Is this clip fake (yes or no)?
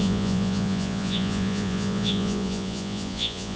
yes